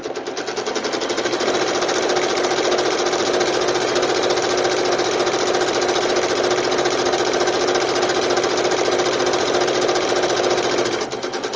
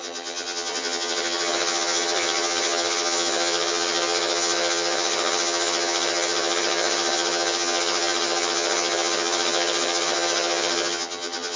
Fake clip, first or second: second